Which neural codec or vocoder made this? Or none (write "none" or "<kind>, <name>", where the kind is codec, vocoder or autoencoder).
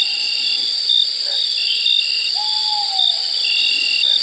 none